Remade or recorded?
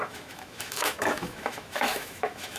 remade